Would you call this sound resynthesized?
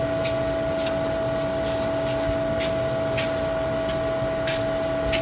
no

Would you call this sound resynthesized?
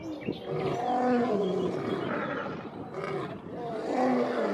no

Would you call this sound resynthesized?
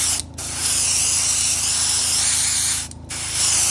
no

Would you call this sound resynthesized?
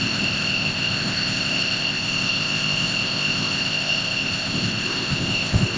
yes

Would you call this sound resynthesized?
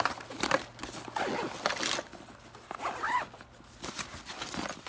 no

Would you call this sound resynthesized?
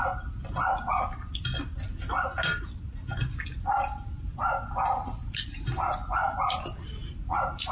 no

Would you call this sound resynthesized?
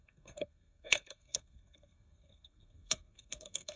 yes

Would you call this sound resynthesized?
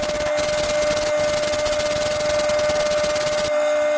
no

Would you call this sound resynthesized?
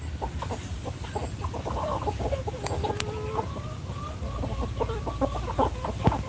no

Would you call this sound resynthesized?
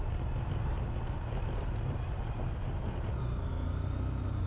no